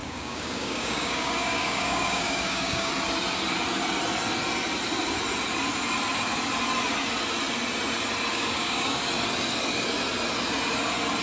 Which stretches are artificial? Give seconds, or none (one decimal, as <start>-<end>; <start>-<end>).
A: 0.0-2.9; 8.3-9.0